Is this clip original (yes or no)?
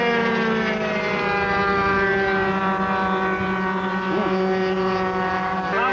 yes